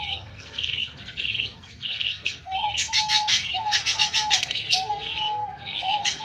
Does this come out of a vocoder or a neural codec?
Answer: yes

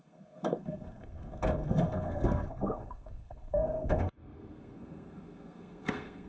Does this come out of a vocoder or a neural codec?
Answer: yes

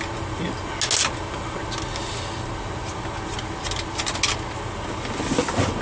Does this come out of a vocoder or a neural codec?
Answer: no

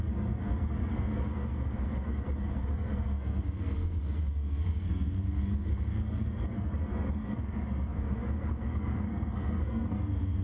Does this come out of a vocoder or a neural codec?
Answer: yes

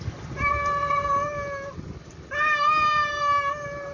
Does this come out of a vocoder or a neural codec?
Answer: no